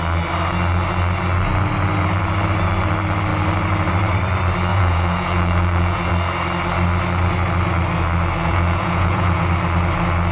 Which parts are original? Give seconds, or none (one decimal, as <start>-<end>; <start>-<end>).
0.0-4.7; 6.1-8.4; 9.5-10.3